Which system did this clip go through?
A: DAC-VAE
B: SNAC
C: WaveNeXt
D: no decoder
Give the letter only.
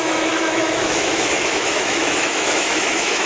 A